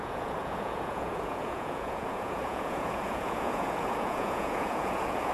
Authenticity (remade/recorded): remade